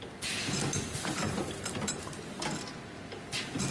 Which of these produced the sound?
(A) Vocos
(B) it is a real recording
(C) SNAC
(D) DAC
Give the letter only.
B